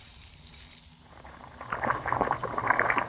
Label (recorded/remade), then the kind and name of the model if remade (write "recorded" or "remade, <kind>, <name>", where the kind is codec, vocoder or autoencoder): remade, vocoder, BigVGAN v2